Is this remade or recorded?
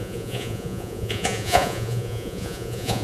remade